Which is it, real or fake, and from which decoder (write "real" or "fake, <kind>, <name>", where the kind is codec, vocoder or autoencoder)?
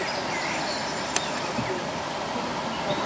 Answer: real